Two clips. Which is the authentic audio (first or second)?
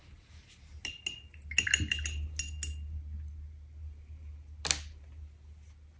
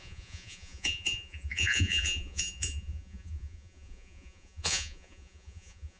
first